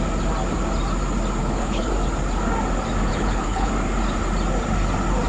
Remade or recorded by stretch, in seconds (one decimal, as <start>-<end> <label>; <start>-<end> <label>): 0.0-1.4 recorded; 1.4-1.9 remade; 1.9-3.1 recorded; 3.1-3.7 remade; 3.7-5.3 recorded